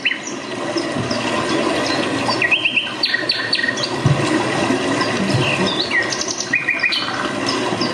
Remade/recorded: recorded